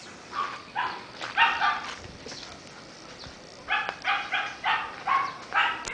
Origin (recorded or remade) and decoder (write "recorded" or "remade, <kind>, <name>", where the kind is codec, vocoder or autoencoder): recorded